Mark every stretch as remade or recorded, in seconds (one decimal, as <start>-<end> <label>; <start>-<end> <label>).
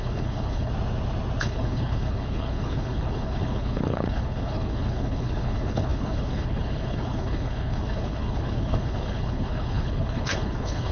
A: 0.0-0.7 remade; 0.7-1.4 recorded; 1.4-10.9 remade